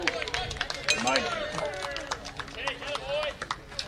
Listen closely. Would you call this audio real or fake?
real